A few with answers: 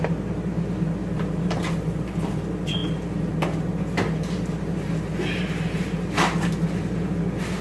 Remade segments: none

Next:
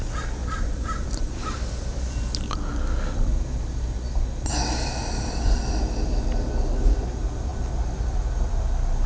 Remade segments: 0.4-2.2

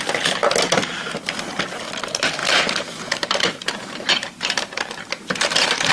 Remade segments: 2.4-5.9

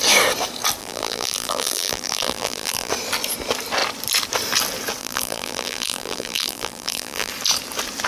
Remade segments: 0.8-2.9; 5.0-7.3

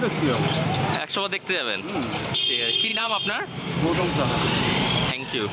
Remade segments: 2.9-5.1

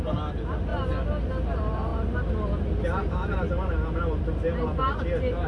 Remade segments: none

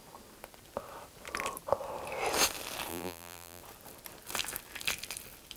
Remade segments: 2.9-3.6